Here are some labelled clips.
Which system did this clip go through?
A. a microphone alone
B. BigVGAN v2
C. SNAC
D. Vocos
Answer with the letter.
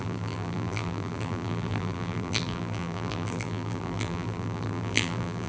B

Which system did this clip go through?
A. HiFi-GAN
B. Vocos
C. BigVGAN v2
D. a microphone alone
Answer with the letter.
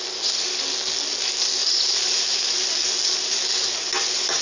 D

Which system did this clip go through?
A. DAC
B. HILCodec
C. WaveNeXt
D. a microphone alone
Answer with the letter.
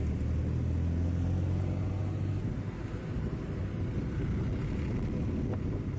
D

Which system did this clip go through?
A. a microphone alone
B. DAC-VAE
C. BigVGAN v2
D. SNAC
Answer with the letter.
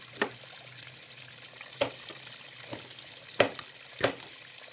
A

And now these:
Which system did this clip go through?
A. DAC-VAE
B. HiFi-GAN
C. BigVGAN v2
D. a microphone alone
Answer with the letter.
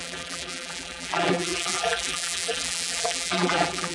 C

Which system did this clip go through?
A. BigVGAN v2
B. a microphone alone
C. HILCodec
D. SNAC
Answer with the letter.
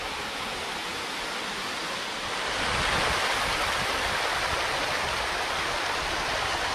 B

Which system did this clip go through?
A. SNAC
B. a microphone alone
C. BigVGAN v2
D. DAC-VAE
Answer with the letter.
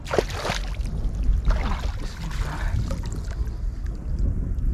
B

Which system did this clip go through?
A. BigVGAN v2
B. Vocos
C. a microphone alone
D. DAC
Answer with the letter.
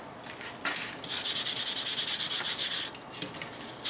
C